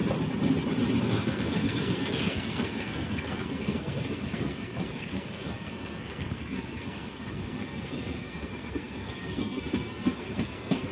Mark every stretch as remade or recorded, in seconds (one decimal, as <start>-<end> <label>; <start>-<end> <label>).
0.0-1.0 recorded; 1.0-10.9 remade